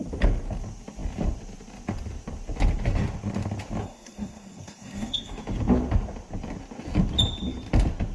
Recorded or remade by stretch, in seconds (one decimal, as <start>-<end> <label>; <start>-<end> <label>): 0.0-3.8 recorded; 3.8-5.4 remade; 5.4-8.1 recorded

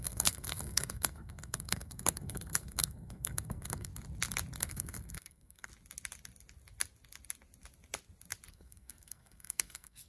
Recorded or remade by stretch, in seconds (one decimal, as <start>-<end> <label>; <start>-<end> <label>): 0.0-3.9 remade; 3.9-4.6 recorded; 4.6-5.7 remade; 5.7-8.5 recorded; 8.5-10.1 remade

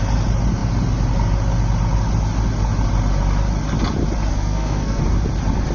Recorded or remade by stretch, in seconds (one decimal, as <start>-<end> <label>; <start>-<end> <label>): 0.0-4.3 recorded; 4.3-5.0 remade; 5.0-5.7 recorded

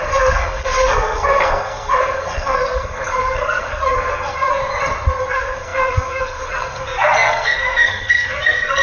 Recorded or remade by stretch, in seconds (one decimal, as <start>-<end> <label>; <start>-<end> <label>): 0.0-4.6 remade; 4.6-5.3 recorded; 5.3-8.8 remade

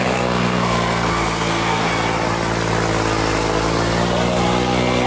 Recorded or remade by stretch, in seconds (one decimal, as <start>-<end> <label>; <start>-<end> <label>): 0.0-1.9 remade; 1.9-5.1 recorded